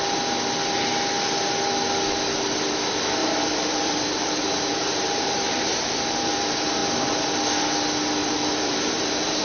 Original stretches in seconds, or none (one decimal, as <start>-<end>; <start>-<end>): 0.0-3.2; 5.8-8.2